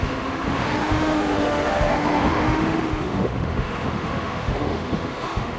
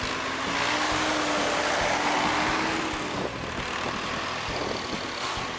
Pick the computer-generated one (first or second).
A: first